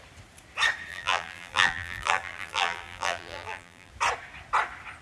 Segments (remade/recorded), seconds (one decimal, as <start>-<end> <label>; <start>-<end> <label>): 0.0-0.9 recorded; 0.9-3.9 remade; 3.9-5.0 recorded